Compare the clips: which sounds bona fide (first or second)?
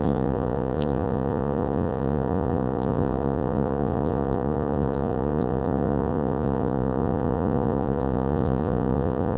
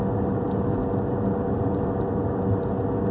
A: second